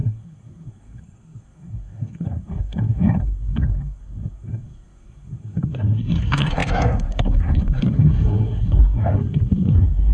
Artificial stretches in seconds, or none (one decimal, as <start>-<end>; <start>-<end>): 0.0-10.1